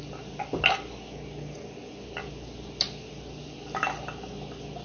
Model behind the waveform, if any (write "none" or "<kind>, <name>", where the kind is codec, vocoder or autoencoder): none